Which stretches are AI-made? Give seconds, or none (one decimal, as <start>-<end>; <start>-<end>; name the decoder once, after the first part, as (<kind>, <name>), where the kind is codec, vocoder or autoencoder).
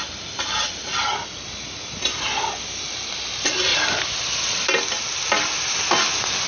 3.7-5.4 (vocoder, BigVGAN v2)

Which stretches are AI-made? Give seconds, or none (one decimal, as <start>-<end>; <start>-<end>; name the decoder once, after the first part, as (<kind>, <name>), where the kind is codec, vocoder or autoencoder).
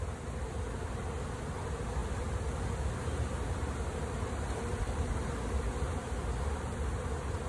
none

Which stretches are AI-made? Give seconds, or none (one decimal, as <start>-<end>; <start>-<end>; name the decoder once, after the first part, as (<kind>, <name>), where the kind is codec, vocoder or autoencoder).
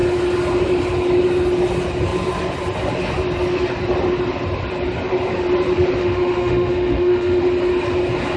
6.0-7.4 (autoencoder, DAC-VAE)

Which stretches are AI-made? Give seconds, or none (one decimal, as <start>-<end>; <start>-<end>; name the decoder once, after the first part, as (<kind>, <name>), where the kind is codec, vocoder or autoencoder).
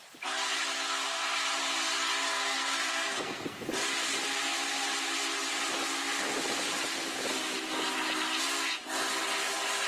2.3-3.7 (codec, SNAC)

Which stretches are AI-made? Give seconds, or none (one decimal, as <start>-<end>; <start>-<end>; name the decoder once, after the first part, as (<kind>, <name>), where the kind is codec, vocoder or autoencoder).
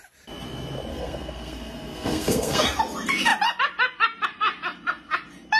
0.9-2.6 (codec, SNAC)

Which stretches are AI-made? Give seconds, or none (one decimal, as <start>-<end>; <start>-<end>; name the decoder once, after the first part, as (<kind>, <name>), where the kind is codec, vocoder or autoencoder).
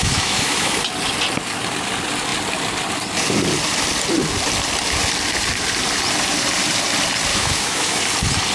0.0-0.8 (autoencoder, DAC-VAE); 7.3-8.0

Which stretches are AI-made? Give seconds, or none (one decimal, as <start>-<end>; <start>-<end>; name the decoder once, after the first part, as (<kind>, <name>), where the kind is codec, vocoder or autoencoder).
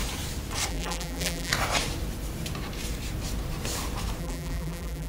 0.7-1.5 (vocoder, BigVGAN v2); 4.2-5.1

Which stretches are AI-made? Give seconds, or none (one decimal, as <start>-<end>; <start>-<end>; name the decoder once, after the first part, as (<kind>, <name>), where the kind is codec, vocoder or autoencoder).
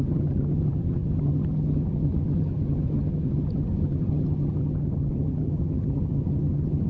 0.0-6.9 (vocoder, HiFi-GAN)